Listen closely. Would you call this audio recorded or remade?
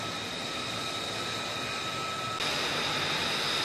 recorded